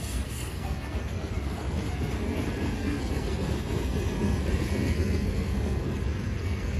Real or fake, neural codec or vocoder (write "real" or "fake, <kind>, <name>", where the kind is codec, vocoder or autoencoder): fake, codec, SNAC